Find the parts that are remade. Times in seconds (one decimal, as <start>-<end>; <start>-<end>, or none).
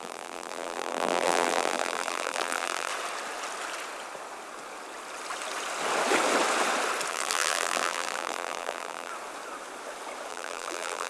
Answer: 0.0-2.9; 7.1-9.1; 10.3-11.1